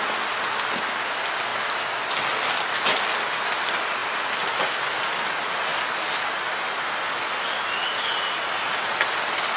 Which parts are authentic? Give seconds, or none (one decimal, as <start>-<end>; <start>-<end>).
0.0-9.6

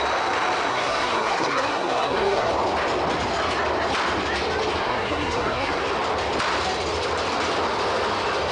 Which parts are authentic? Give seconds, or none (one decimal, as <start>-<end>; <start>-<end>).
0.0-0.7; 2.5-4.8; 5.8-8.5